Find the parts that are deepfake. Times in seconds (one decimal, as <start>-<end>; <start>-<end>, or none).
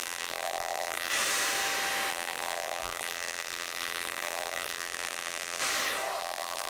0.0-1.1; 2.1-5.6; 6.2-6.7